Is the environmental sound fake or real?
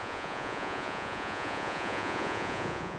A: fake